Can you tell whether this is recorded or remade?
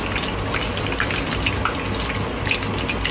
recorded